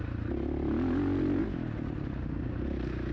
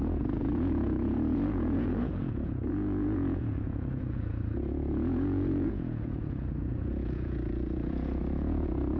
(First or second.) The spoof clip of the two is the second